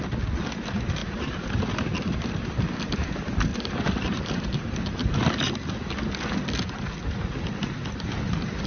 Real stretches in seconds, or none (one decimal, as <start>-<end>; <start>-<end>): 0.0-1.0; 1.6-3.5; 5.1-8.7